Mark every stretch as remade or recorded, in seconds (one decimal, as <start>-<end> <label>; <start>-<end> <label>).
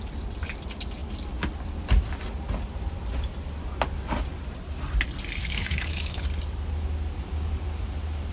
0.0-5.4 recorded; 5.4-6.2 remade; 6.2-8.3 recorded